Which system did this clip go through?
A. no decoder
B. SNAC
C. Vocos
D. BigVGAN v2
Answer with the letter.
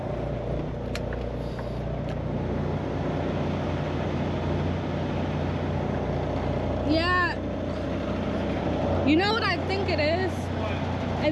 A